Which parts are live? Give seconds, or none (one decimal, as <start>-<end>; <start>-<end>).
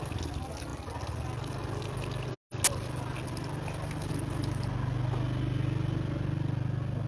0.0-7.1